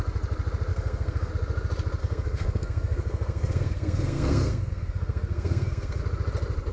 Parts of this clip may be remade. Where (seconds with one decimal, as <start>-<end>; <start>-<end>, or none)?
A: 0.7-1.3; 2.0-6.0